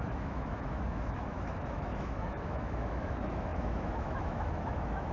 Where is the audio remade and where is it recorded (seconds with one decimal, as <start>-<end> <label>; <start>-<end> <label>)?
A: 0.0-5.1 remade